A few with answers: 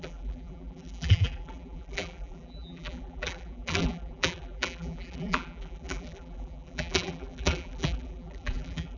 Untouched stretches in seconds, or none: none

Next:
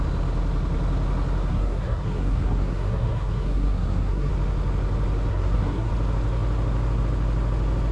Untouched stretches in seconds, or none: 0.0-1.5; 4.3-5.3; 5.9-7.9